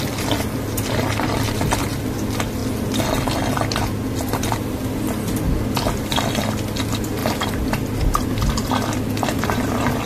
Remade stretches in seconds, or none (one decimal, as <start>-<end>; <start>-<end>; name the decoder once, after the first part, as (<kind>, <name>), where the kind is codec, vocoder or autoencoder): none